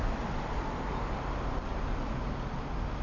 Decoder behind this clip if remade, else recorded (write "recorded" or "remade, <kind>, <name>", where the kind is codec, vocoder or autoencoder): recorded